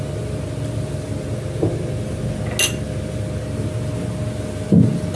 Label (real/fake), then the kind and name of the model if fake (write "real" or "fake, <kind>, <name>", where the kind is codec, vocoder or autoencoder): real